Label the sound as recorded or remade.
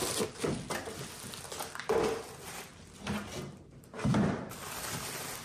recorded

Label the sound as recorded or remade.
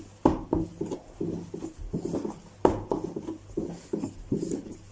recorded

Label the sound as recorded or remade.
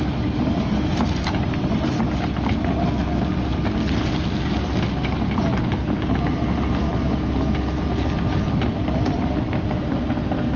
recorded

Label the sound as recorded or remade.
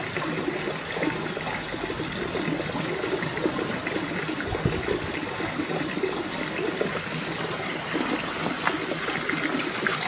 recorded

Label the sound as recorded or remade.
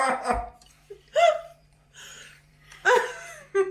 remade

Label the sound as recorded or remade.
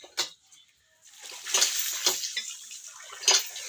recorded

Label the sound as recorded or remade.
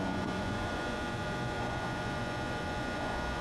remade